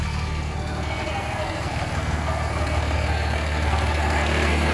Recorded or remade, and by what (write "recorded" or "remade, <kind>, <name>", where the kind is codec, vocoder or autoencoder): remade, codec, SNAC